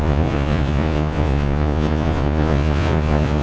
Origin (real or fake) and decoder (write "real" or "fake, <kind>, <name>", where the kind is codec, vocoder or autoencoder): fake, vocoder, Vocos